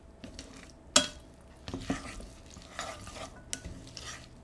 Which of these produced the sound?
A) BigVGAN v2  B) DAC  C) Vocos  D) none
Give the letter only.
D